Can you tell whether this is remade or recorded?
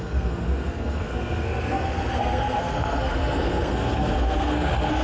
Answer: remade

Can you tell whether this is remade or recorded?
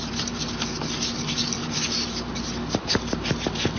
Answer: recorded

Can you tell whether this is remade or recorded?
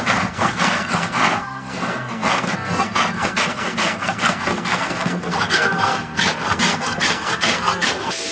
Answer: remade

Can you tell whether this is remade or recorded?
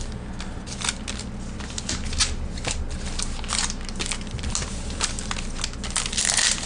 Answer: recorded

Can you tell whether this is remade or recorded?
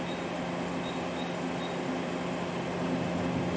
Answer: recorded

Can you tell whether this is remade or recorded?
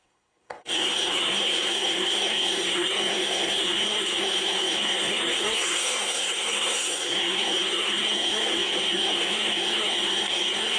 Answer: remade